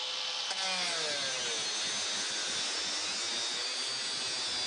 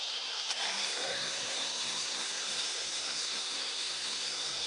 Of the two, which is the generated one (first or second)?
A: second